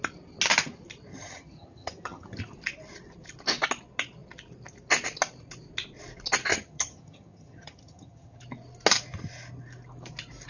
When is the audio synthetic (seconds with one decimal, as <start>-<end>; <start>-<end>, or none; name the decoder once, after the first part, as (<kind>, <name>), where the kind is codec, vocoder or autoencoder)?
1.1-2.4 (vocoder, HiFi-GAN); 6.5-8.4